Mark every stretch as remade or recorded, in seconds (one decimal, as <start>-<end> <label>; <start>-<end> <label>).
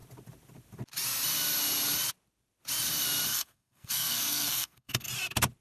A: 0.0-3.3 recorded; 3.3-5.1 remade; 5.1-5.6 recorded